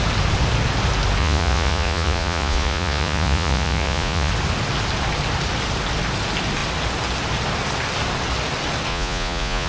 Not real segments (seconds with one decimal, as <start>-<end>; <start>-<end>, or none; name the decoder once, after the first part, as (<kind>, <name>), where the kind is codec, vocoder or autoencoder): 1.2-4.3 (vocoder, Vocos); 8.9-9.7